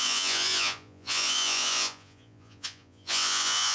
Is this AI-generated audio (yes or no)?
yes